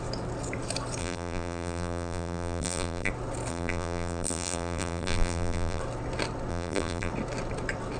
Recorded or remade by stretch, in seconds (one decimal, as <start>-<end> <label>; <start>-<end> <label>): 0.0-1.0 recorded; 1.0-3.1 remade; 3.1-3.5 recorded; 3.5-5.8 remade; 5.8-6.5 recorded; 6.5-7.1 remade; 7.1-8.0 recorded